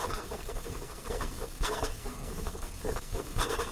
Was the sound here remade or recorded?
remade